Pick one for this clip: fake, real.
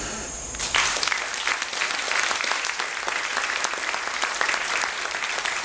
real